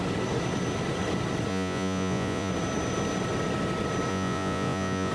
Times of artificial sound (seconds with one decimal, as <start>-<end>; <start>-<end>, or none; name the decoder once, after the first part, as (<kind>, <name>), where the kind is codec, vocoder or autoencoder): 1.5-2.5 (vocoder, Vocos); 4.1-5.1